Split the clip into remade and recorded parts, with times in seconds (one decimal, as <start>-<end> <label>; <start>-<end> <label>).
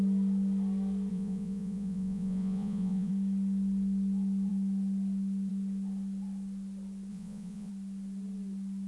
0.0-1.1 recorded; 1.1-3.1 remade; 3.1-7.1 recorded; 7.1-7.7 remade; 7.7-8.9 recorded